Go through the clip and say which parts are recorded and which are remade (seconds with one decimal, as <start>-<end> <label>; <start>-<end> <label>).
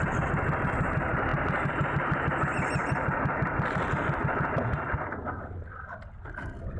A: 0.0-6.8 recorded